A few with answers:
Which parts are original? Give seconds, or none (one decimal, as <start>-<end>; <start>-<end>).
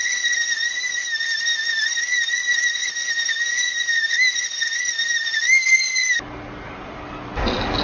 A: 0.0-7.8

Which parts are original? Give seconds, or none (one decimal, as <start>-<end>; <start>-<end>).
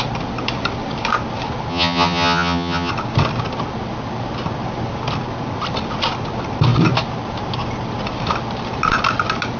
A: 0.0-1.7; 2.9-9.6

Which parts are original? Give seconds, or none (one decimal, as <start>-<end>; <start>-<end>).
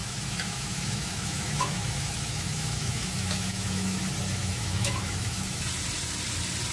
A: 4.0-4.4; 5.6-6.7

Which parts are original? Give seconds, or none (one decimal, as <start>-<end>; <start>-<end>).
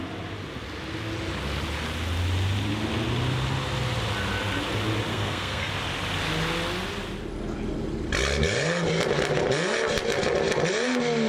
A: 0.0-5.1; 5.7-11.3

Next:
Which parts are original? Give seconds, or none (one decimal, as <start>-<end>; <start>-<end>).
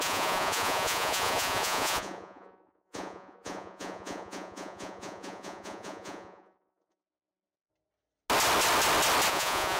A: 7.7-9.3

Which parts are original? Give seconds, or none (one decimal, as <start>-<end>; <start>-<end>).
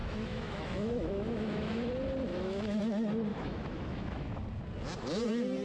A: 1.9-2.3; 2.8-3.3; 4.4-5.6